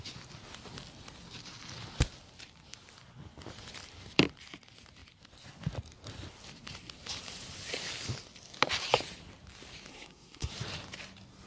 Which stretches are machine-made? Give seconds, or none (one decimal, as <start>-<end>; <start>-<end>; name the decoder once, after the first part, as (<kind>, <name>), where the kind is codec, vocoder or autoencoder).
9.9-10.5 (codec, SNAC)